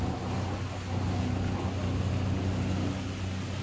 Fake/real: real